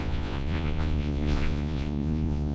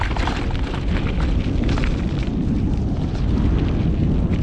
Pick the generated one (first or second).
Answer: first